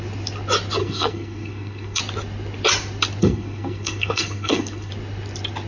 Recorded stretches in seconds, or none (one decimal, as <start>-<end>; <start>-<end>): 0.0-0.8; 2.0-3.2; 4.9-5.7